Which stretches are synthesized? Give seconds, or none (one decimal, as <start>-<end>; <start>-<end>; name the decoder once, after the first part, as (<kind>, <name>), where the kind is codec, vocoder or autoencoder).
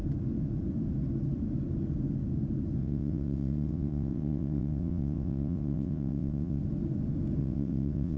2.8-6.6 (vocoder, WaveNeXt); 7.4-8.2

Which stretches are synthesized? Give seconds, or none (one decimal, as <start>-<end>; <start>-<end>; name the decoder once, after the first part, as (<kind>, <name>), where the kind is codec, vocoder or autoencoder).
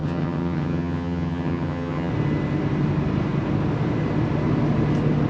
0.0-2.1 (vocoder, HiFi-GAN)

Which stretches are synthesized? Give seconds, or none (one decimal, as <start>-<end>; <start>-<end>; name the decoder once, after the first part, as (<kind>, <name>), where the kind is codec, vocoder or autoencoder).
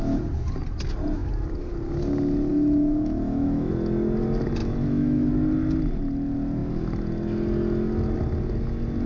2.5-3.7 (autoencoder, DAC-VAE); 4.6-5.3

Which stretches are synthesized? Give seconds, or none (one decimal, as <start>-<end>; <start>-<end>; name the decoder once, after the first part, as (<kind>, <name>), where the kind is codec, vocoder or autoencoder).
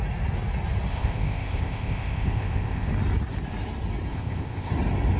0.9-2.9 (codec, ZipCodec); 4.1-4.7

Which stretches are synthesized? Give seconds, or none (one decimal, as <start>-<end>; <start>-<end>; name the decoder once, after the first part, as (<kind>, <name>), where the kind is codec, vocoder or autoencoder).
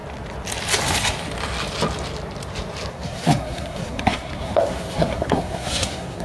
2.9-6.2 (codec, SNAC)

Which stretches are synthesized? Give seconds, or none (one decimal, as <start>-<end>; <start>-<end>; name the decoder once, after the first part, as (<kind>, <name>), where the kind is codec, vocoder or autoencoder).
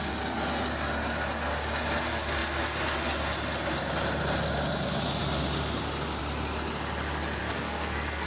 7.4-8.3 (codec, SNAC)